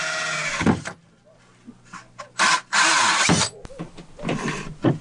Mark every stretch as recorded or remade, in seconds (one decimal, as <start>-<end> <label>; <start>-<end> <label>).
0.0-5.0 recorded